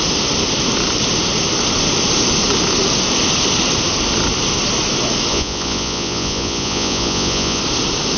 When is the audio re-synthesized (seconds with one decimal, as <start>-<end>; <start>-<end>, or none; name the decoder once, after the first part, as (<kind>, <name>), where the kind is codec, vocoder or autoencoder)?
5.3-7.6 (vocoder, Vocos)